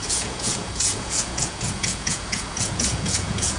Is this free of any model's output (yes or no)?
no